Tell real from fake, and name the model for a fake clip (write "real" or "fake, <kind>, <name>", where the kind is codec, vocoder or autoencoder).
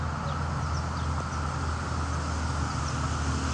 real